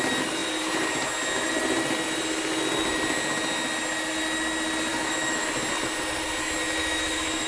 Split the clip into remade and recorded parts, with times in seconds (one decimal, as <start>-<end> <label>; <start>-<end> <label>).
0.0-4.9 recorded; 4.9-5.5 remade; 5.5-6.8 recorded; 6.8-7.5 remade